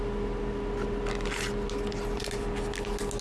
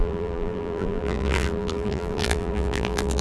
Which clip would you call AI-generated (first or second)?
second